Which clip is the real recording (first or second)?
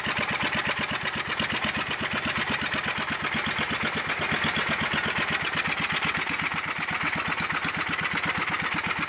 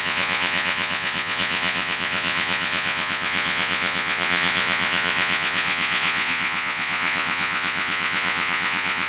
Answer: first